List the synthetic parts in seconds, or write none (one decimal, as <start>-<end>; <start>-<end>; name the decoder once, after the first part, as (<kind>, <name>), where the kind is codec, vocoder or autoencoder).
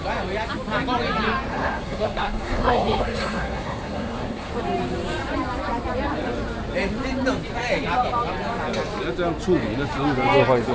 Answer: 1.5-4.5 (codec, SNAC)